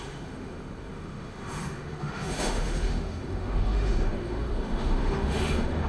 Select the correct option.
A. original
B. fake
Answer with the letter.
B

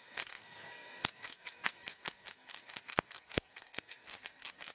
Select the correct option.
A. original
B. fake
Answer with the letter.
B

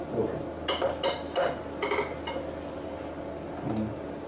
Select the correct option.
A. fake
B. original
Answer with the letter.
B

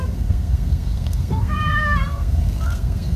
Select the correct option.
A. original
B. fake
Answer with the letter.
B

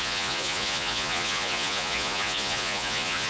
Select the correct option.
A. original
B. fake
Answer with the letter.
B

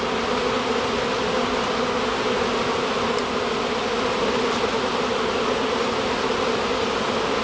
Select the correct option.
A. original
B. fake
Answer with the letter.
A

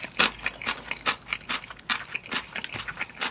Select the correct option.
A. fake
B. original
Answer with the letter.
B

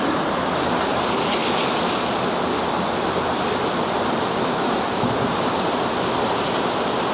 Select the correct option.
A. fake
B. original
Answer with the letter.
A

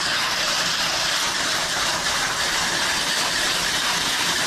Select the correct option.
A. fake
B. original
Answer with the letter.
A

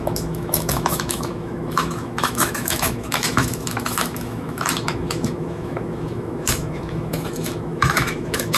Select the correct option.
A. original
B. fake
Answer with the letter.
B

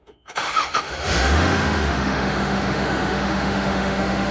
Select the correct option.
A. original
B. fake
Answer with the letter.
B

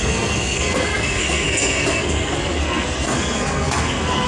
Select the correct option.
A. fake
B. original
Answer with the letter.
A